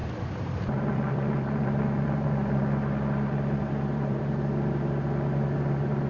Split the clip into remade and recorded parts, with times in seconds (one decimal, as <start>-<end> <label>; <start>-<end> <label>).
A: 0.0-2.6 remade; 2.6-3.6 recorded; 3.6-4.2 remade; 4.2-6.1 recorded